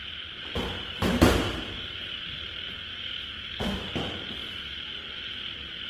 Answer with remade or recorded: recorded